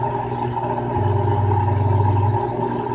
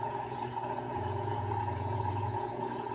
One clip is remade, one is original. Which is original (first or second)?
first